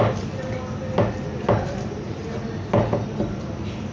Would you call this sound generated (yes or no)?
no